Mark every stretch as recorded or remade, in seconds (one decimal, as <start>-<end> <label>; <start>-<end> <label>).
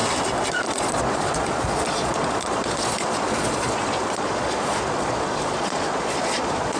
0.0-0.5 recorded; 0.5-6.8 remade